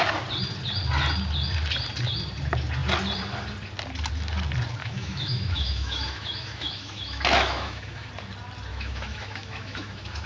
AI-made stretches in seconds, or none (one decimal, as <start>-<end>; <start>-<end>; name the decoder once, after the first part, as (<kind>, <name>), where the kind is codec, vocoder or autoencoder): 4.8-8.1 (autoencoder, DAC-VAE); 8.7-10.3